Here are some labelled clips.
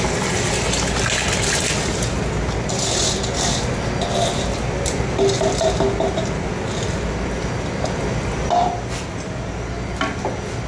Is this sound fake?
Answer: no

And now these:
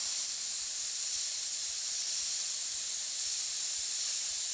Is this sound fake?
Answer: no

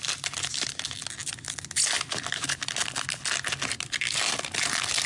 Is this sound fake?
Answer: no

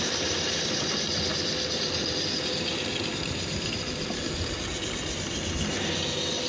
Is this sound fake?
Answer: no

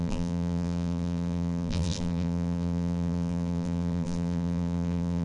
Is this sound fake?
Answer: yes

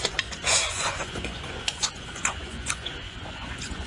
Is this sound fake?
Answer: yes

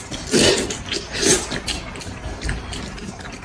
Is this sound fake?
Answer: no